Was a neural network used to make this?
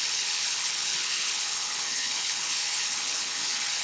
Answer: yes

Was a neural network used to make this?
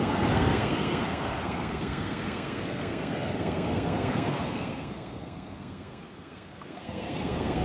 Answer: yes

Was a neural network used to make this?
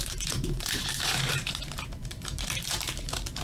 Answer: yes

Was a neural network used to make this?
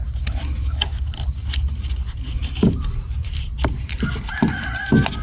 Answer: no